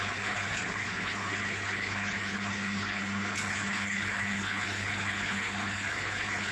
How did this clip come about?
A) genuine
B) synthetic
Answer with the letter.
B